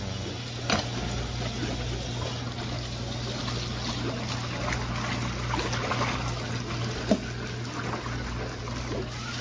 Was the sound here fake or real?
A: real